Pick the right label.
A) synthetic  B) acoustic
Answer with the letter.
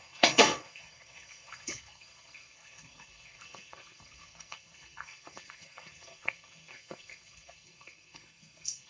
A